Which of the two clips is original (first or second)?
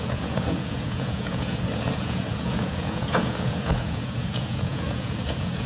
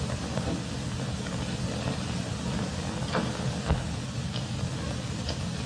second